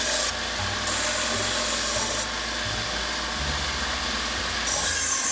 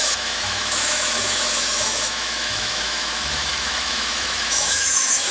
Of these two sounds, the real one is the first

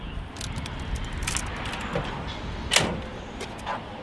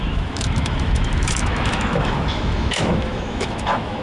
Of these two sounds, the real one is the first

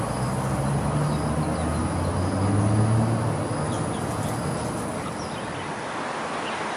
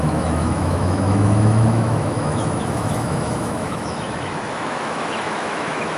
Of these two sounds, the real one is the first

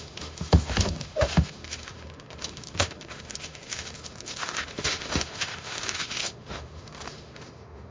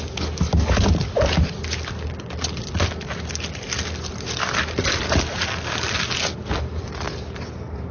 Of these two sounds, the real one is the second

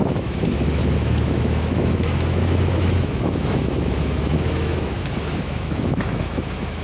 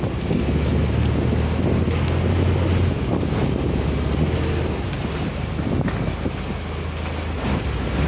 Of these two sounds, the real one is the second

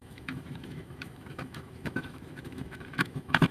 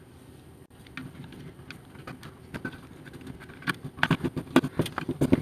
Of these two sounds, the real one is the second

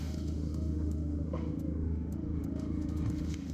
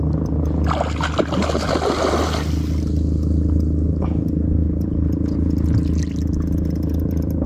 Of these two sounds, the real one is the second